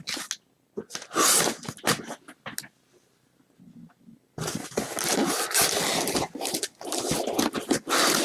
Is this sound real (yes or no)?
yes